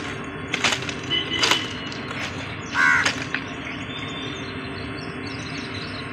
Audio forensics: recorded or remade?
recorded